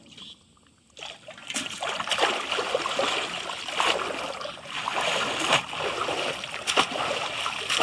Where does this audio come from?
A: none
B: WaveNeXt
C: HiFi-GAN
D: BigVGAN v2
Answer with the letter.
A